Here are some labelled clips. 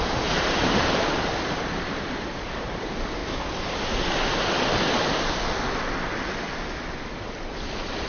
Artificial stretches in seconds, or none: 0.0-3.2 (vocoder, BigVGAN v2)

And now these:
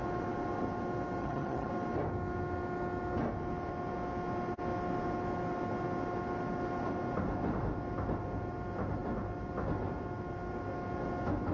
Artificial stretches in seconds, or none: 1.2-1.7 (vocoder, HiFi-GAN)

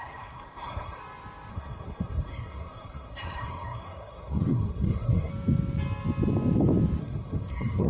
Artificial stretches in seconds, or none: 0.0-1.0 (codec, SNAC); 1.5-5.3; 7.0-7.9

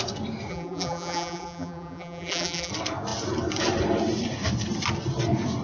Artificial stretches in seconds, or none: 0.5-2.7 (vocoder, BigVGAN v2)